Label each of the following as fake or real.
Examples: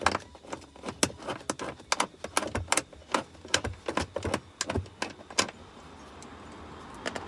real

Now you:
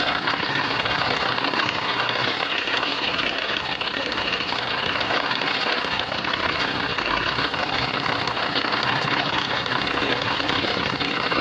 fake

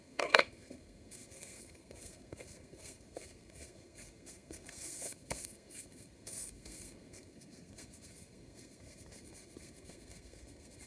fake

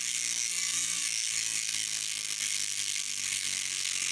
fake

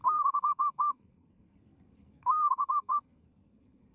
fake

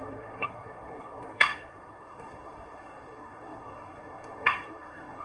fake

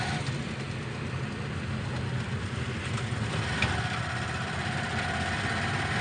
real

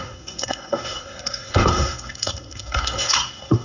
fake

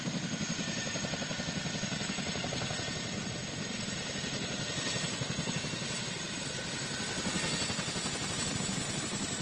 real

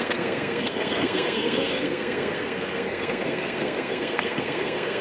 fake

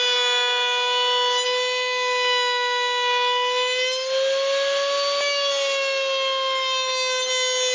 real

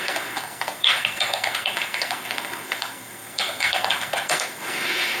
fake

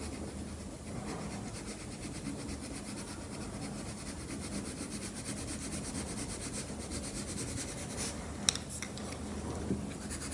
real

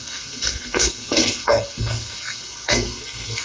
fake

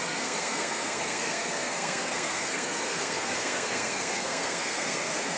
fake